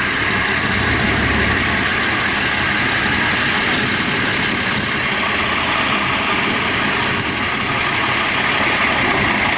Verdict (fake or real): real